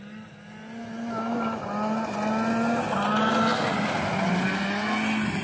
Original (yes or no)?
yes